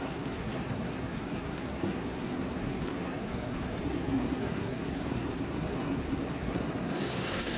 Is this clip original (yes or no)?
no